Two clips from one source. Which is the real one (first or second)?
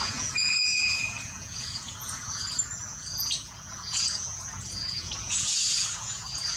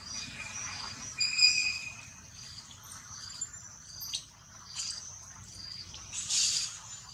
second